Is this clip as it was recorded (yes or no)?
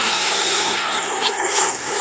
no